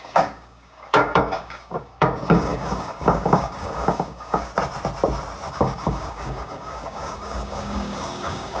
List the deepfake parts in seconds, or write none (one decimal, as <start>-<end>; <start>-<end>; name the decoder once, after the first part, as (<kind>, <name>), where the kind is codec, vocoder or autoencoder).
0.0-4.5 (codec, DAC); 5.5-8.6